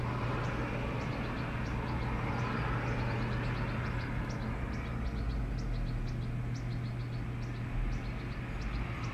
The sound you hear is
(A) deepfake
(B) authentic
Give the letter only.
B